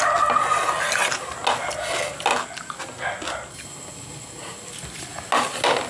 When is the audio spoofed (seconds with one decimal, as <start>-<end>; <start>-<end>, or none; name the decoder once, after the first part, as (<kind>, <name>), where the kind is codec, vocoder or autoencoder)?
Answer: none